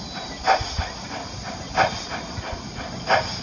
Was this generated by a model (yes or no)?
no